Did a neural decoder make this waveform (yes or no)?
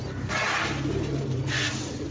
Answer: no